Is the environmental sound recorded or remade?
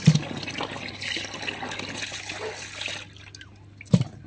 recorded